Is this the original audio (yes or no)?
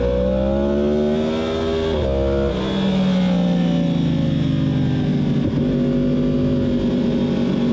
yes